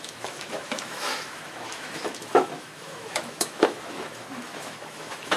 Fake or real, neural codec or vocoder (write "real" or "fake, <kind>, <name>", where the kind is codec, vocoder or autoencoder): fake, autoencoder, DAC-VAE